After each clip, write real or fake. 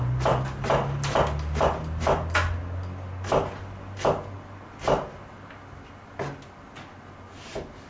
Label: real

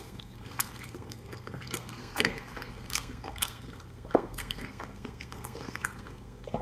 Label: fake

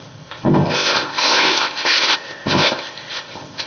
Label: fake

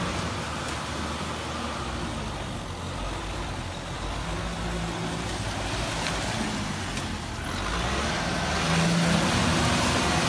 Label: real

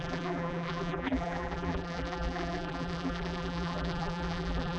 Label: fake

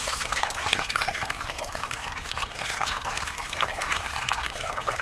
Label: fake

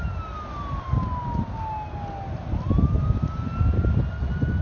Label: real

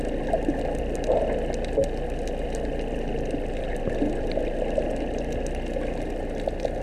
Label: real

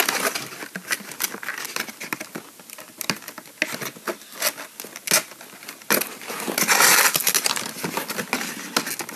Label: real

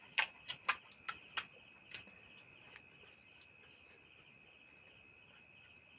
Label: real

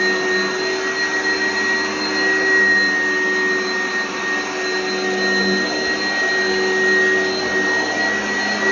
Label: real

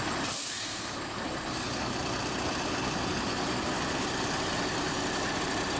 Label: real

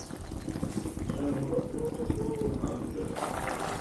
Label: real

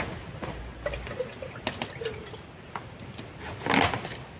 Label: real